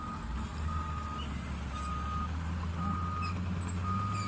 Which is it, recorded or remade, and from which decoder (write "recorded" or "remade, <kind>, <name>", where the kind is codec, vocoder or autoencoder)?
recorded